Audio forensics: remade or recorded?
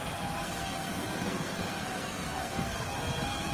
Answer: remade